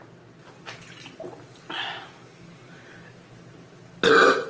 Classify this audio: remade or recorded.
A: recorded